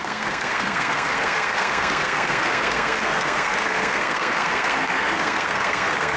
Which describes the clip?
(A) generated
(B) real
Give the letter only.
A